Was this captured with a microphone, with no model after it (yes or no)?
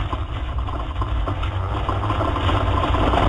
yes